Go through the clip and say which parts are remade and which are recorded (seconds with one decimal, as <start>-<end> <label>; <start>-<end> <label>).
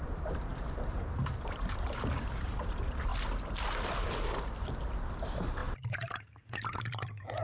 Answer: 0.0-3.1 remade; 3.1-5.1 recorded; 5.1-7.4 remade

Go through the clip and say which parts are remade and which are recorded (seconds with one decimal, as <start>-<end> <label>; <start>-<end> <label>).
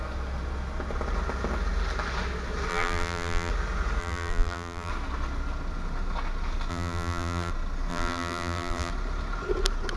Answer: 0.0-2.7 recorded; 2.7-3.5 remade; 3.5-4.0 recorded; 4.0-4.9 remade; 4.9-6.7 recorded; 6.7-7.5 remade; 7.5-7.9 recorded; 7.9-8.9 remade; 8.9-10.0 recorded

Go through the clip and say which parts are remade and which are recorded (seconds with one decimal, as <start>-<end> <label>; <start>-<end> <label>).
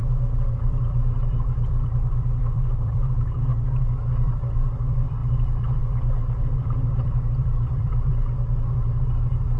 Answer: 0.0-3.5 remade; 3.5-4.1 recorded; 4.1-8.1 remade; 8.1-9.2 recorded; 9.2-9.6 remade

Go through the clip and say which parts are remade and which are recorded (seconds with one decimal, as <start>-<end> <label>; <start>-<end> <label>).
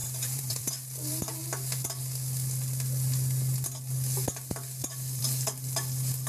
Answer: 0.0-0.7 remade; 0.7-6.3 recorded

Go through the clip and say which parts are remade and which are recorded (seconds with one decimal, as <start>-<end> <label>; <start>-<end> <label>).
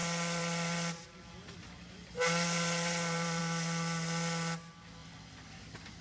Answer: 0.0-3.4 remade; 3.4-5.0 recorded; 5.0-6.0 remade